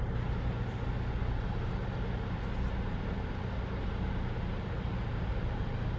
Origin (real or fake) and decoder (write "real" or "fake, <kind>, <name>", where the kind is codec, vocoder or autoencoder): real